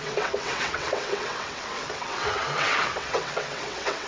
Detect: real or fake fake